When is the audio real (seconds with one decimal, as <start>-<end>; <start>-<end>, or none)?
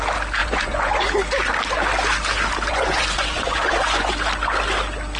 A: 0.0-0.4; 1.0-2.7; 4.1-5.2